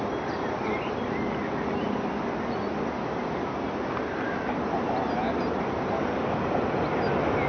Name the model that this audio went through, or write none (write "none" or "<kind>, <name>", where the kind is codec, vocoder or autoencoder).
none